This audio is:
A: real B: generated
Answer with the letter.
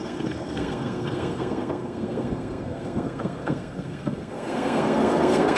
B